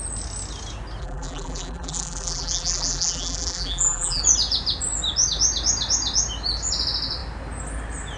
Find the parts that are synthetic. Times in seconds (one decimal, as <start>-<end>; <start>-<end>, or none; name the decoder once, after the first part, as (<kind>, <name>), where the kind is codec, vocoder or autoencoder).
1.0-4.2 (vocoder, BigVGAN v2)